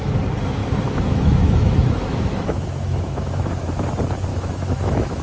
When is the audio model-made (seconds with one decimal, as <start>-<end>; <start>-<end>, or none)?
0.6-3.7; 4.3-5.2